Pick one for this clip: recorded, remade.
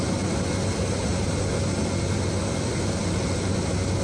recorded